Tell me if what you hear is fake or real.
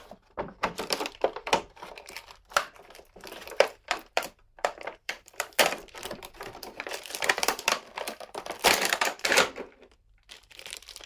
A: fake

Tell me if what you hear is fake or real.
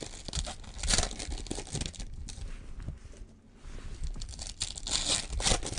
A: real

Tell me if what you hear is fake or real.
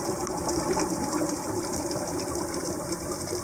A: real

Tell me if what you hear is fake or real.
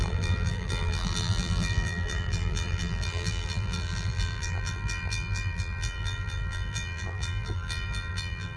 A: fake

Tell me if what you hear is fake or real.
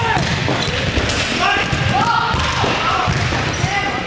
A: real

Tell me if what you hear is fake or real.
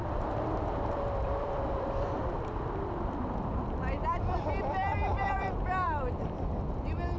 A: fake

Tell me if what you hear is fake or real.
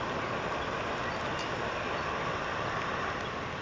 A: real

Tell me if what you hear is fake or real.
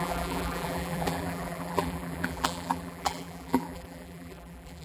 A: fake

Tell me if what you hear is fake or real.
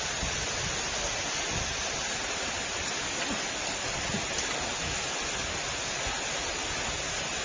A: real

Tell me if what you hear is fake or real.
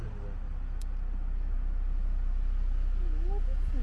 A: real